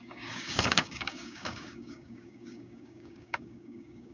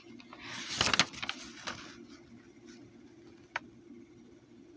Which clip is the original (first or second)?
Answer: second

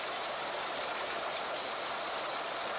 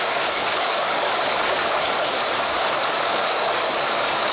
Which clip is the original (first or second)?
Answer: first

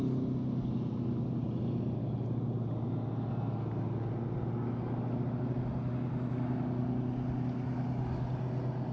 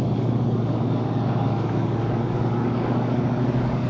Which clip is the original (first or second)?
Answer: first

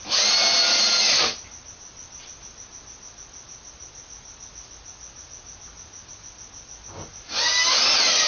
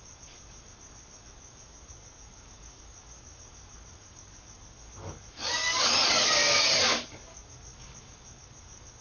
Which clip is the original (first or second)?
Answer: first